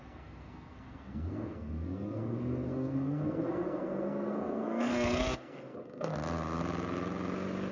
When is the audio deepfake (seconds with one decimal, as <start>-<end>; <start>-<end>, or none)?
0.0-6.1